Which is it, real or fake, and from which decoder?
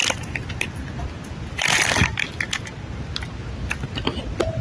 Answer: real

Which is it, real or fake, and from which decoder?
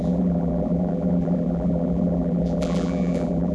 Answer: fake, vocoder, BigVGAN v2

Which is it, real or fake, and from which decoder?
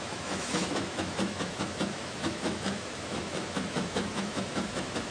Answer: fake, autoencoder, DAC-VAE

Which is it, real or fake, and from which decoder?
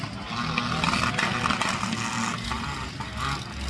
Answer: real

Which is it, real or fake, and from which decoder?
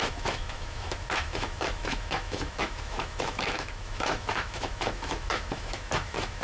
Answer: fake, autoencoder, DAC-VAE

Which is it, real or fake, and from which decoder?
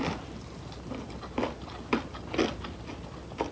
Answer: real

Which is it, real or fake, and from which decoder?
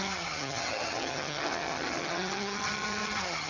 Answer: fake, vocoder, HiFi-GAN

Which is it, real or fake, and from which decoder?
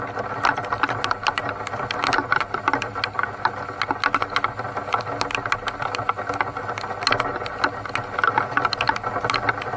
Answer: real